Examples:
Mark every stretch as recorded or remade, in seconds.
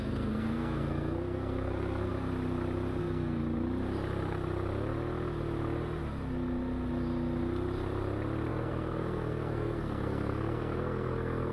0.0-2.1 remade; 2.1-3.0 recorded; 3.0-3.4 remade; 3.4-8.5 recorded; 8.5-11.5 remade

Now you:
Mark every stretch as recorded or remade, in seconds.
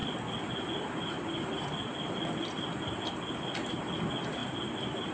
0.0-3.1 remade; 3.1-4.4 recorded; 4.4-5.1 remade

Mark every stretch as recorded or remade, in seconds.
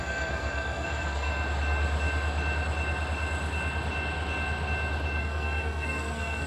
0.0-1.3 remade; 1.3-5.2 recorded; 5.2-6.5 remade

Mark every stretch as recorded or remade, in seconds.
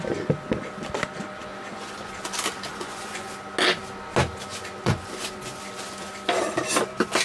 0.0-1.5 recorded; 1.5-2.1 remade; 2.1-2.7 recorded; 2.7-3.3 remade; 3.3-4.5 recorded; 4.5-5.6 remade; 5.6-7.2 recorded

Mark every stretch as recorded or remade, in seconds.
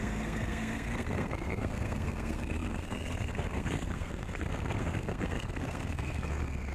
0.0-6.7 remade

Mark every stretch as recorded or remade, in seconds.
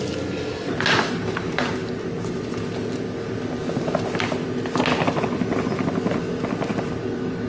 0.0-7.5 recorded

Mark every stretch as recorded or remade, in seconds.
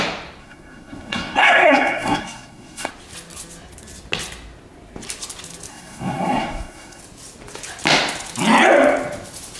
0.0-0.4 recorded; 0.4-2.9 remade; 2.9-5.7 recorded; 5.7-7.0 remade; 7.0-9.6 recorded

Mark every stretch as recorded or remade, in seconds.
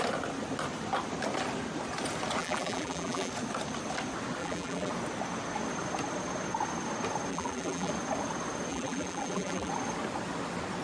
0.0-2.4 recorded; 2.4-3.3 remade; 3.3-4.4 recorded; 4.4-4.9 remade; 4.9-7.3 recorded; 7.3-7.9 remade; 7.9-8.7 recorded; 8.7-9.7 remade; 9.7-10.8 recorded